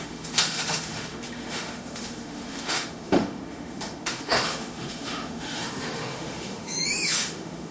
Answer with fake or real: fake